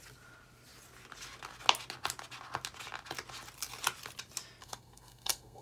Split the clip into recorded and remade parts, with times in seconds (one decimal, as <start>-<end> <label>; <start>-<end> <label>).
0.0-4.6 recorded; 4.6-5.6 remade